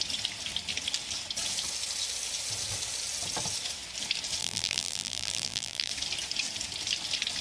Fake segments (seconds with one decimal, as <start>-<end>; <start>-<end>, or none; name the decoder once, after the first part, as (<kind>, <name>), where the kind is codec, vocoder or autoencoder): 4.4-5.9 (vocoder, BigVGAN v2)